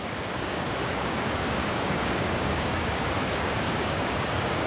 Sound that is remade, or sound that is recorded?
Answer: remade